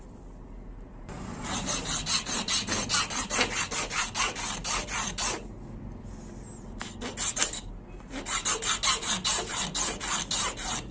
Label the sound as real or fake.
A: real